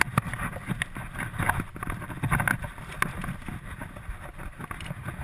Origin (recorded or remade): recorded